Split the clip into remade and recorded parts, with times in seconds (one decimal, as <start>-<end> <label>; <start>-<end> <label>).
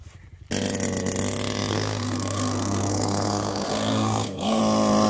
0.0-1.7 recorded; 1.7-4.6 remade; 4.6-5.1 recorded